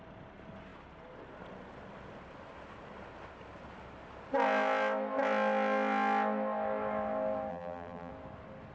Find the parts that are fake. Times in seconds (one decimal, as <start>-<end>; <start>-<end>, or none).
7.5-8.1